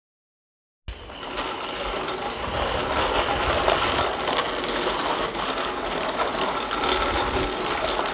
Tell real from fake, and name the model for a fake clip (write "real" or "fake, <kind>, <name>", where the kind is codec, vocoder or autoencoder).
real